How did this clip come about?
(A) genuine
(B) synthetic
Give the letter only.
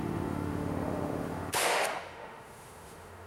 B